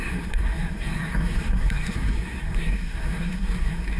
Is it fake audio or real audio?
fake